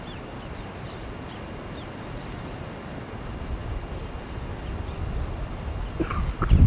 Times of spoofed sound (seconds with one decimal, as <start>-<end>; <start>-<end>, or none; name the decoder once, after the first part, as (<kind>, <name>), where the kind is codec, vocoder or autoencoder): none